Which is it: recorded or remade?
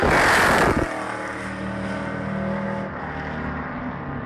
recorded